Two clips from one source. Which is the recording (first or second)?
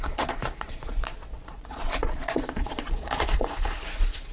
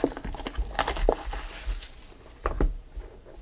second